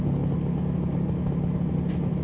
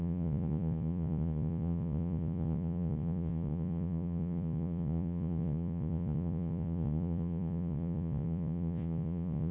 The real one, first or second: first